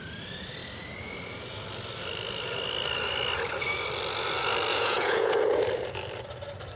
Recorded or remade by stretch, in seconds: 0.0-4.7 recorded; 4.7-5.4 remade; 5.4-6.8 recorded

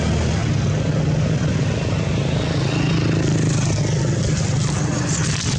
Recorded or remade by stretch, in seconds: 0.0-5.6 recorded

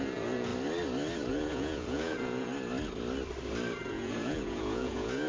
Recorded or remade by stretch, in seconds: 0.0-0.5 remade; 0.5-1.3 recorded; 1.3-2.5 remade; 2.5-3.9 recorded; 3.9-5.3 remade